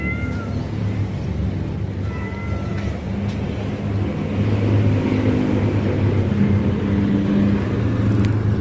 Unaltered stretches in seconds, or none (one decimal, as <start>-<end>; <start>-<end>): 0.0-8.6